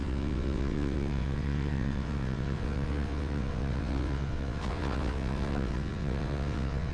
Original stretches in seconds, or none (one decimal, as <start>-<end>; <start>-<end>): none

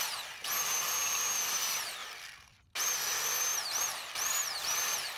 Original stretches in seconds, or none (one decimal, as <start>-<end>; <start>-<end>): 0.0-5.2